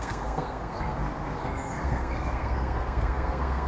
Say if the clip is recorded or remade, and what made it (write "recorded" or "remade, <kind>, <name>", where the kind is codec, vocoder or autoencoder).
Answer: remade, codec, SNAC